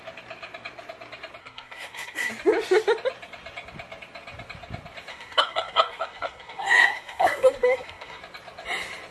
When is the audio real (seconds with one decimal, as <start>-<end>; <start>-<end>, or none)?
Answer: 0.0-1.4; 2.3-5.1; 8.2-9.1